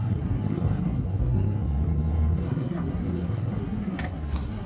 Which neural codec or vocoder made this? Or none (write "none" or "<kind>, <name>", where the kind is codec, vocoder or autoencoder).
codec, SNAC